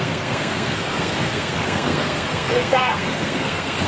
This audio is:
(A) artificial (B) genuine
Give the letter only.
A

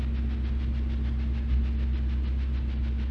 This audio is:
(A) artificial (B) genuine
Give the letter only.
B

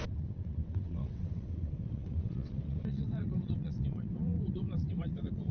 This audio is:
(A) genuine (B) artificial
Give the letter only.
B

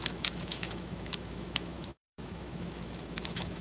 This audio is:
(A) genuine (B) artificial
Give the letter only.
B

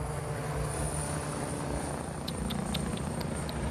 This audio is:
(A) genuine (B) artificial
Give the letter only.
B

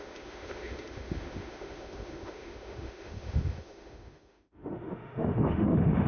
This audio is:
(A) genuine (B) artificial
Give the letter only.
B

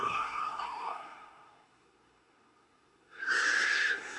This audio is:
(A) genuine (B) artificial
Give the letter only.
B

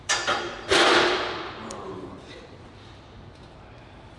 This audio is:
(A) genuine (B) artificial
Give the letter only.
B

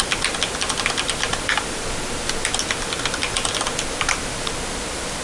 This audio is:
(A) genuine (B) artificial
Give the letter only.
A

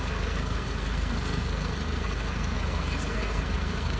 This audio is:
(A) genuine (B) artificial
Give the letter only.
B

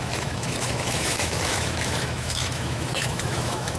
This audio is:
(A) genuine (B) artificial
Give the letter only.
B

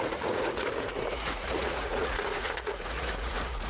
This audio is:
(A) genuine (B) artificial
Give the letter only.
B